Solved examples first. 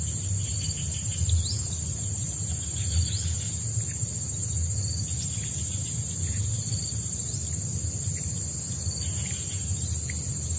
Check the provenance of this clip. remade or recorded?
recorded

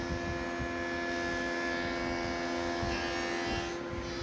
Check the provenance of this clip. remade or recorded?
recorded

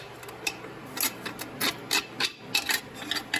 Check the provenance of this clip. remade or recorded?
recorded